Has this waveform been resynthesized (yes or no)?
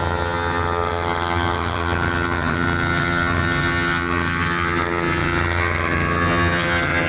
yes